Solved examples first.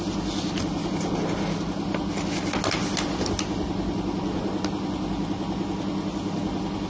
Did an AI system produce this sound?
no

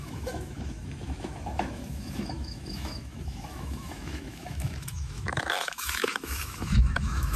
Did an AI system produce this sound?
yes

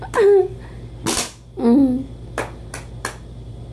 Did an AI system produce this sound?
no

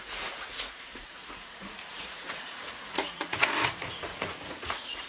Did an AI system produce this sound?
yes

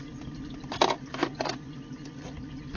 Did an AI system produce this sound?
no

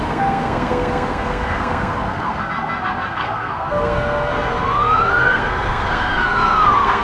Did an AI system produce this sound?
yes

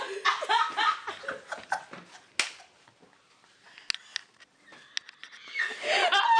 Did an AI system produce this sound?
no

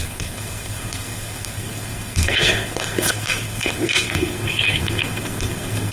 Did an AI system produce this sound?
yes